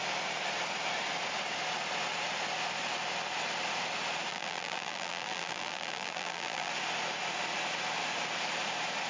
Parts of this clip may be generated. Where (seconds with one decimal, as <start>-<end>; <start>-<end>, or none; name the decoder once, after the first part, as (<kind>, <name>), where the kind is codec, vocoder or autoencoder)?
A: 4.3-6.7 (vocoder, BigVGAN v2)